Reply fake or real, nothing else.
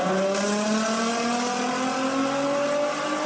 real